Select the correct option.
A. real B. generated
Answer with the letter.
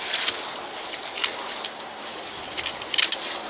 A